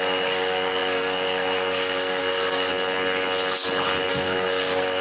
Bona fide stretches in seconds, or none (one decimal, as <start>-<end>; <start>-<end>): 2.7-4.1